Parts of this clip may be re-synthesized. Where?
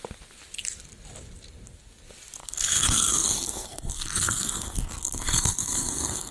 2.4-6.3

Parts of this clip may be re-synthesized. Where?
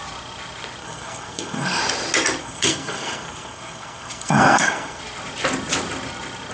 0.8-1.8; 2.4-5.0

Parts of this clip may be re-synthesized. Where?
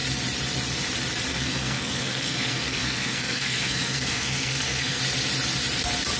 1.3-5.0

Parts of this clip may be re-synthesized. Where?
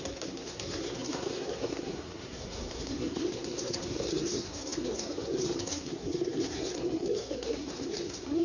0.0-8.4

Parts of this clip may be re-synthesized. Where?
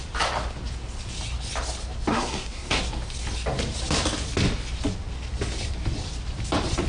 2.1-2.8